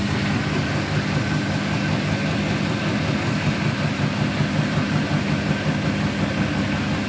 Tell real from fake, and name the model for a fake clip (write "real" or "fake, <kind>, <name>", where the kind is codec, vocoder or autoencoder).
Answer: real